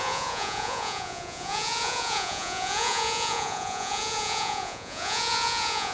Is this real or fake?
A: fake